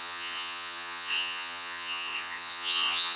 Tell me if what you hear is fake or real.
fake